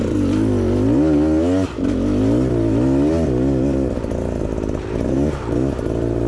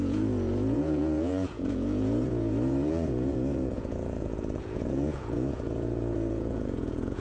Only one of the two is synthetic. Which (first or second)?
second